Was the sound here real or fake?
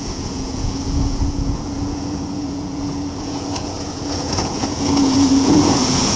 fake